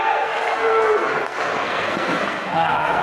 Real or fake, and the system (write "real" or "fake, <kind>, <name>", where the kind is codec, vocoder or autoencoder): fake, codec, SNAC